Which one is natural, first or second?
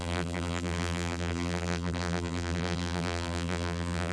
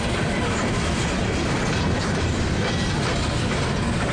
second